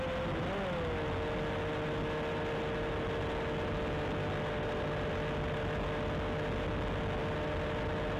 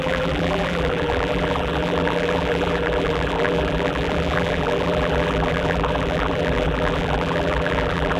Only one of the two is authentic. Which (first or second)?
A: first